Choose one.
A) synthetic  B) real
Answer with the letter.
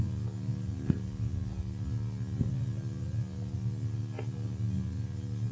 B